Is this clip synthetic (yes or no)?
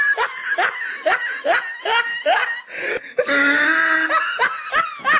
no